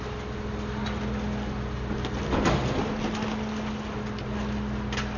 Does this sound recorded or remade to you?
recorded